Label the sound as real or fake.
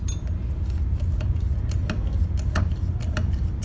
real